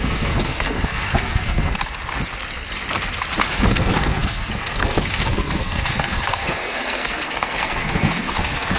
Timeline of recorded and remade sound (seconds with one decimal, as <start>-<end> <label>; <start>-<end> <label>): 0.0-1.7 remade; 1.7-3.5 recorded; 3.5-8.8 remade